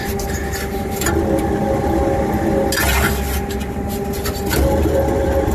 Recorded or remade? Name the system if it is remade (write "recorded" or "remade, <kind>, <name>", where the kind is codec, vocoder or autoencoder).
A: recorded